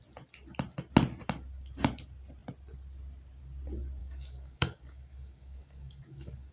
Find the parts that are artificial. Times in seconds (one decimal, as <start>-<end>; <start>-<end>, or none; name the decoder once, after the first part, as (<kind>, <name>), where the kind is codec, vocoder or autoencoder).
4.0-6.5 (codec, DAC)